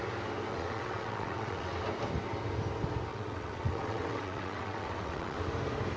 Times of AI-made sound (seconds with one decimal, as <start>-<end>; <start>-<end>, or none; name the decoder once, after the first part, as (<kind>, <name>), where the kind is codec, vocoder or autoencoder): 0.5-1.8 (vocoder, WaveNeXt); 3.1-5.5